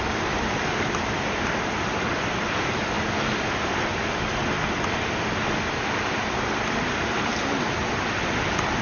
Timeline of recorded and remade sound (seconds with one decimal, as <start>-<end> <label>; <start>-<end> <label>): 0.0-8.8 recorded